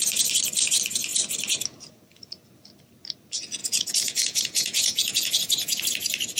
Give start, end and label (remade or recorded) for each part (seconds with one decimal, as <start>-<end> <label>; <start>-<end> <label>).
0.0-3.6 recorded; 3.6-5.8 remade; 5.8-6.4 recorded